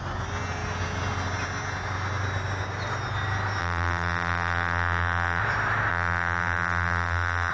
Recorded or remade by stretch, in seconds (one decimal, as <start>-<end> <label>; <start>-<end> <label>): 0.0-3.6 recorded; 3.6-5.4 remade; 5.4-5.9 recorded; 5.9-7.5 remade